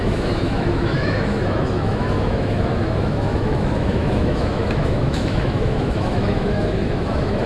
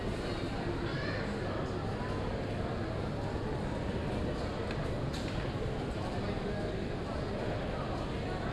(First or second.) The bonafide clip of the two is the second